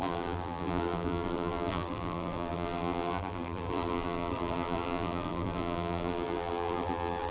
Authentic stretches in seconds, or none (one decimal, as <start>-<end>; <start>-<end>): none